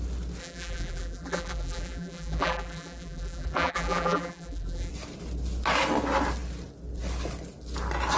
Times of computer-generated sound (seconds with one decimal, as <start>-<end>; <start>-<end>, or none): 0.4-4.9